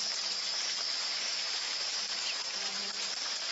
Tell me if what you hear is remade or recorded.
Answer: remade